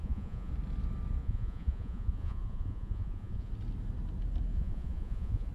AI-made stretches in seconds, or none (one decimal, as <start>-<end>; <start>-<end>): 0.0-0.5; 1.2-3.5; 4.5-5.5